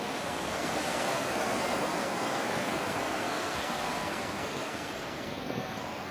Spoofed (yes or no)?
yes